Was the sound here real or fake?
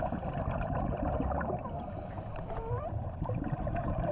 fake